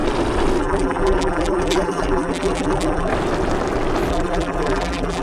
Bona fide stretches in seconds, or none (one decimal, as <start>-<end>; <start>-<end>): 0.0-0.6; 3.1-4.1